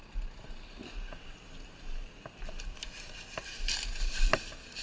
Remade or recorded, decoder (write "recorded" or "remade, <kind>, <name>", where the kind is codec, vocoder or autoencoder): remade, vocoder, BigVGAN v2